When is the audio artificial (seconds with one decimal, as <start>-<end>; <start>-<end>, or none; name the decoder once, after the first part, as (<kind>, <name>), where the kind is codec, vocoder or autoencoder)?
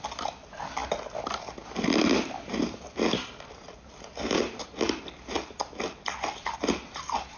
none